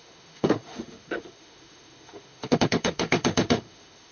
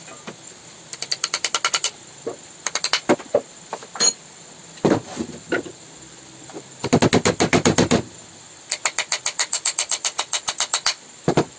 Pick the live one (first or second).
second